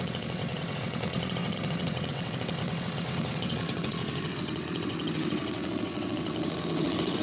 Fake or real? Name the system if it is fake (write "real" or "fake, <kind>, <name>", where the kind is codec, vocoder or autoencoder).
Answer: fake, vocoder, WaveNeXt